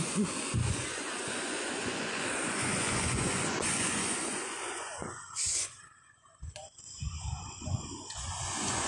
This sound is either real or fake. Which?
fake